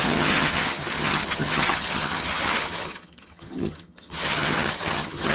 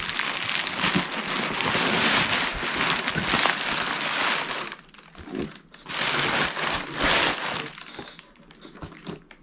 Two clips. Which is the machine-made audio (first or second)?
first